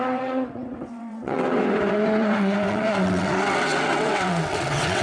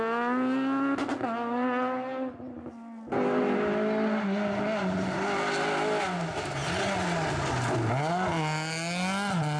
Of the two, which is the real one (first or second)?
second